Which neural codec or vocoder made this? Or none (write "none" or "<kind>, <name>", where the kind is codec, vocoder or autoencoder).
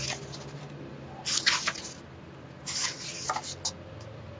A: none